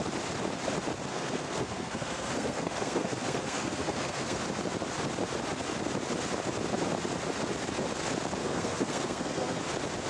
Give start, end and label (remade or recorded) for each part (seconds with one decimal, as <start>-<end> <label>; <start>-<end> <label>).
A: 0.0-1.1 recorded; 1.1-4.4 remade; 4.4-8.4 recorded; 8.4-9.6 remade; 9.6-10.1 recorded